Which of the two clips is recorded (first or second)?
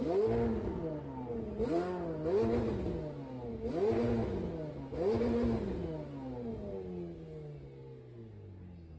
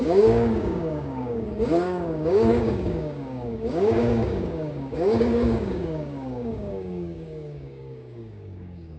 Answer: first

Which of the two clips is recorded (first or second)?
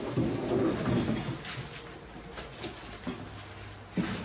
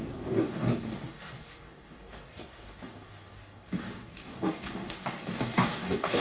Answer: first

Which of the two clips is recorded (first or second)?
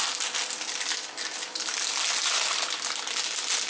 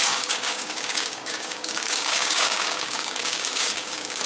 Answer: first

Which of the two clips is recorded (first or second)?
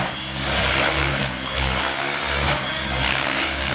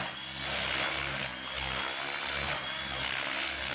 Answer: second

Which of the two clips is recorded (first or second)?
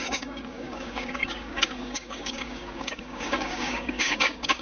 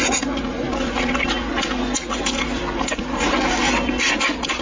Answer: second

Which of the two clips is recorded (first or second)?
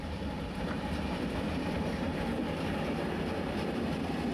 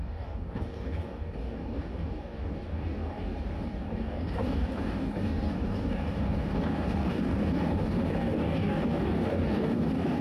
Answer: first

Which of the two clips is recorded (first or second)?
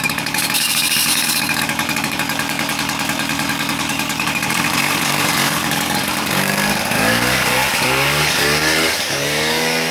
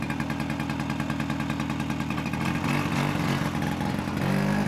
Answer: second